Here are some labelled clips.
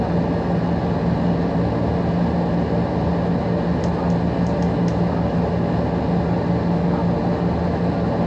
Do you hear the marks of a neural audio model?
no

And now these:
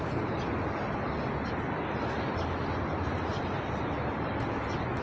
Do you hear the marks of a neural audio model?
no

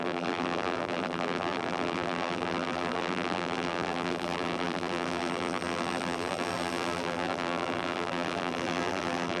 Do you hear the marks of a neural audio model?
yes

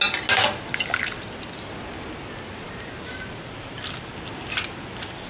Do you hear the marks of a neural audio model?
no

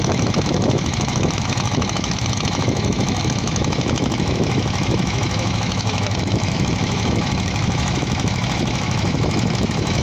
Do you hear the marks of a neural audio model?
yes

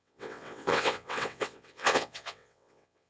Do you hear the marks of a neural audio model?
yes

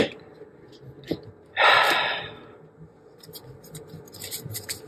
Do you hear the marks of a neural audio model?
no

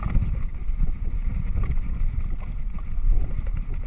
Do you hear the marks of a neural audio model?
no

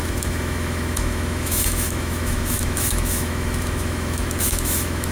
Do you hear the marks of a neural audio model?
yes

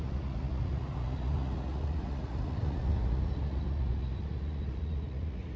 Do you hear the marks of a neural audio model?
yes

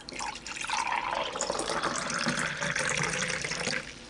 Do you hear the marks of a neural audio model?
no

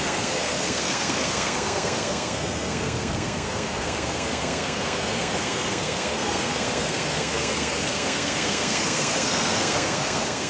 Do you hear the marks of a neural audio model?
yes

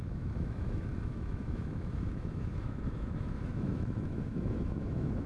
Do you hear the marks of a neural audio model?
yes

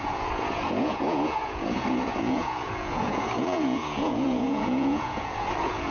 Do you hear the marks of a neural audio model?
yes